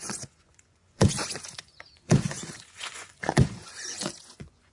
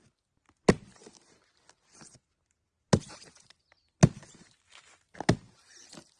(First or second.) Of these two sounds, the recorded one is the second